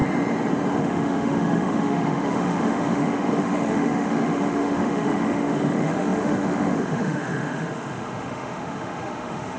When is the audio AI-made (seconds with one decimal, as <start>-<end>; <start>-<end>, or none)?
0.8-9.6